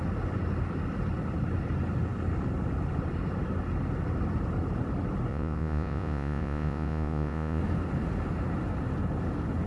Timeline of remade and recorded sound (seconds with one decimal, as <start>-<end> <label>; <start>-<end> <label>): 0.0-5.3 recorded; 5.3-7.6 remade; 7.6-9.7 recorded